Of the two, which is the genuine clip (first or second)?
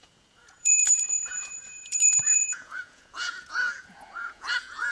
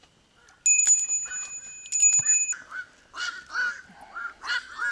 second